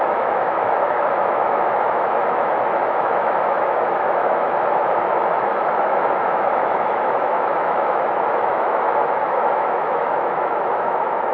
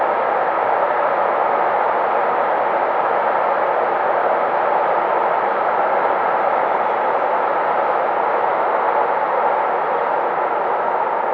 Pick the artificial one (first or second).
first